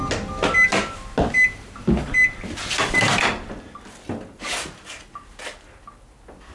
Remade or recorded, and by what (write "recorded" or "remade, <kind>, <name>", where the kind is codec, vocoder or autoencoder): recorded